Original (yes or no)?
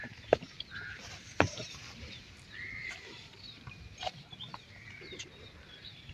no